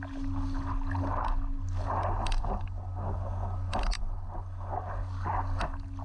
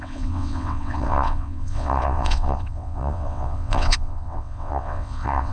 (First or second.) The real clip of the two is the first